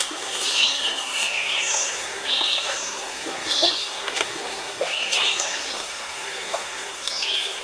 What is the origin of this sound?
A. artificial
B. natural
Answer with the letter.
A